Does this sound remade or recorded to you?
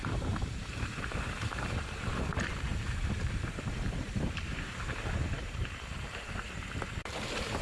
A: remade